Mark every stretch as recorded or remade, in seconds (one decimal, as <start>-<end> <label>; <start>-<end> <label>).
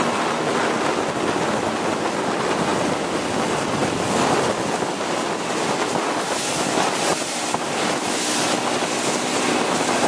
0.0-7.1 recorded; 7.1-8.1 remade; 8.1-10.1 recorded